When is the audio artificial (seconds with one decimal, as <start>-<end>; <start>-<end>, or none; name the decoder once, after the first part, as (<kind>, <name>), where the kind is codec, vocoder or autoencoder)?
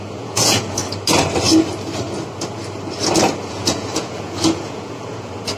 0.0-0.8 (vocoder, Vocos); 3.5-5.6